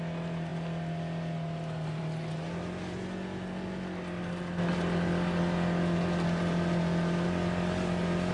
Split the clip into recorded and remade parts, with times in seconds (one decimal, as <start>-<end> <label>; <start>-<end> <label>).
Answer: 0.0-8.3 recorded